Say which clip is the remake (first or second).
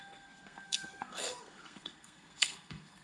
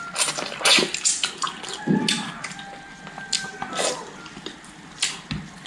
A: first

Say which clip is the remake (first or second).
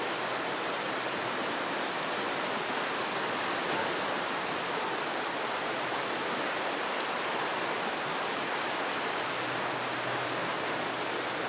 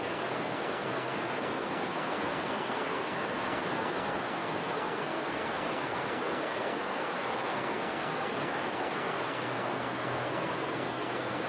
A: second